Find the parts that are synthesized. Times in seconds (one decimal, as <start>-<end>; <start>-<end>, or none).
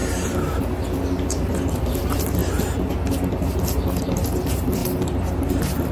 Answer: 1.8-2.4; 4.1-4.8; 5.5-5.9